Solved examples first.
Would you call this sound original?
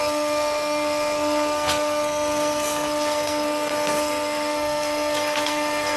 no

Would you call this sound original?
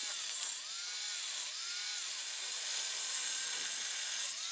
yes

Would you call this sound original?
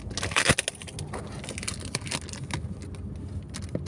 yes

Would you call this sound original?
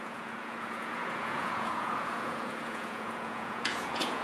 no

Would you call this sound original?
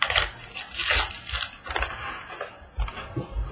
yes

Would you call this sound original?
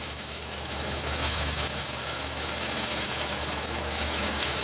no